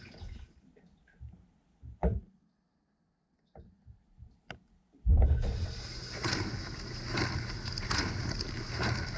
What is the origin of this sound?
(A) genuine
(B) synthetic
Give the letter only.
A